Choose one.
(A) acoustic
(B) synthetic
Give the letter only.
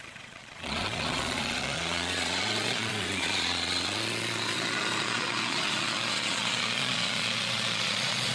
B